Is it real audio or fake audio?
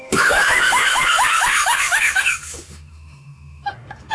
fake